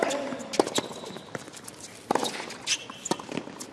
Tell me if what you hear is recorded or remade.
recorded